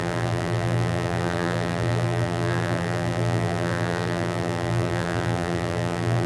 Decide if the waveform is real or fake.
fake